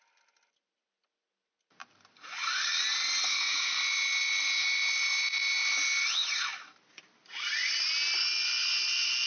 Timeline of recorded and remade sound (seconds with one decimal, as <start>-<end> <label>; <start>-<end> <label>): 0.0-9.3 recorded